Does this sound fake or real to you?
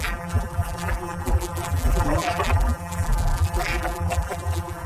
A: fake